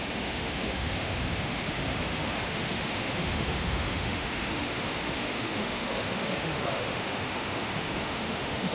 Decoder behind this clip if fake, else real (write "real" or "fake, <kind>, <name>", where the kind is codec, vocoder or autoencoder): fake, autoencoder, DAC-VAE